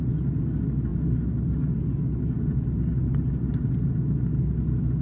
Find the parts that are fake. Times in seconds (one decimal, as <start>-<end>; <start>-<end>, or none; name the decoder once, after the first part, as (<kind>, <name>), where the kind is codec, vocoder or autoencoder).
none